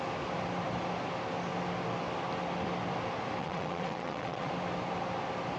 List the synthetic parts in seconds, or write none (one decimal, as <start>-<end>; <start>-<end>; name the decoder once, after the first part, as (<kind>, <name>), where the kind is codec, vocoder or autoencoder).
3.4-4.5 (vocoder, WaveNeXt)